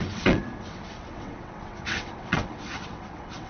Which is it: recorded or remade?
remade